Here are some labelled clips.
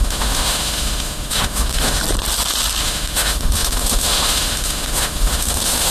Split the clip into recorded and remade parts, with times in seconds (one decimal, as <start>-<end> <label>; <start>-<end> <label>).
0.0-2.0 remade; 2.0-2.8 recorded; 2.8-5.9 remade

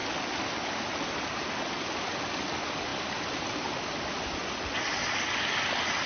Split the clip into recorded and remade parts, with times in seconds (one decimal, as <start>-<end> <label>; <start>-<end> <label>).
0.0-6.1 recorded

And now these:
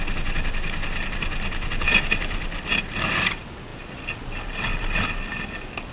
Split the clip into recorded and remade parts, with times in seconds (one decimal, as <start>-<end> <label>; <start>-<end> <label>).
0.0-5.9 recorded

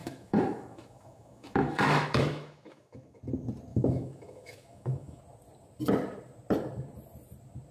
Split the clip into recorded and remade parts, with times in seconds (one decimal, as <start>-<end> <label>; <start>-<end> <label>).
0.0-3.2 remade; 3.2-3.7 recorded; 3.7-5.2 remade; 5.2-7.7 recorded

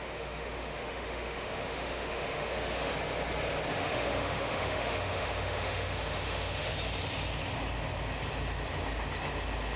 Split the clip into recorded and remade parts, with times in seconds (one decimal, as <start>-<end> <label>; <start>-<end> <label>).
0.0-2.9 remade; 2.9-3.7 recorded; 3.7-6.7 remade; 6.7-9.8 recorded

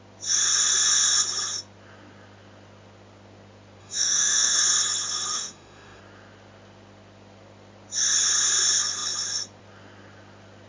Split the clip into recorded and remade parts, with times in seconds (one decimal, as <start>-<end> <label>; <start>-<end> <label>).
0.0-3.8 recorded; 3.8-4.6 remade; 4.6-5.3 recorded; 5.3-6.0 remade; 6.0-10.7 recorded

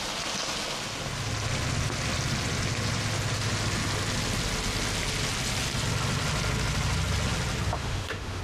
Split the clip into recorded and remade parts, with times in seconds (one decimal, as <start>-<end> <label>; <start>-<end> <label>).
0.0-7.7 recorded; 7.7-8.4 remade